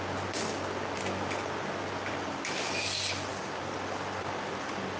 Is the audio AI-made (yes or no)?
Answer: no